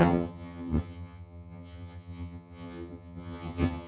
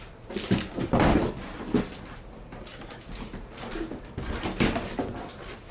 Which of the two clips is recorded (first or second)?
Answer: second